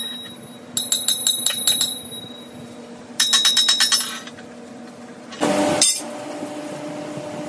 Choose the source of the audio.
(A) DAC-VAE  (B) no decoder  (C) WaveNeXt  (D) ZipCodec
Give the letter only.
B